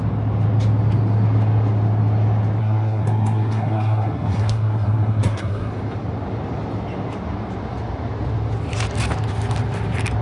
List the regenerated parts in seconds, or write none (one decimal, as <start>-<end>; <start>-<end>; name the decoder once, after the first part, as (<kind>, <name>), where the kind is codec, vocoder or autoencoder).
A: 2.6-5.7 (codec, SNAC)